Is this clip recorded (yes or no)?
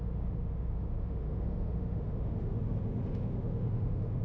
no